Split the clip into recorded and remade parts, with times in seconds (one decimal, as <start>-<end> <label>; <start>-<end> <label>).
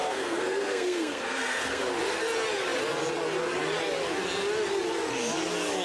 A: 0.0-1.8 remade; 1.8-5.8 recorded